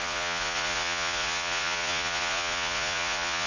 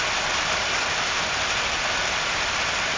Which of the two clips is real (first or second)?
second